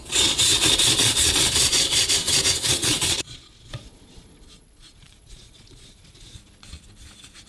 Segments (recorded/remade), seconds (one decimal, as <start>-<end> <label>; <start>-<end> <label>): 0.0-7.5 remade